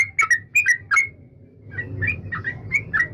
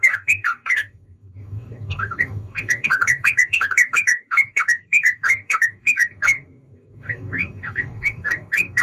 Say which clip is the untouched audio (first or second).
first